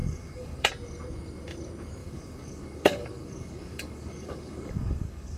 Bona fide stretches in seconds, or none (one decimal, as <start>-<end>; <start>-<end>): 0.7-2.0